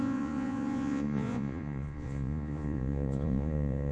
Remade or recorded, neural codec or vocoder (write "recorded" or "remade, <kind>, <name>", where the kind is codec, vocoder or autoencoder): remade, vocoder, Vocos